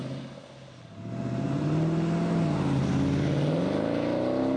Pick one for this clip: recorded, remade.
recorded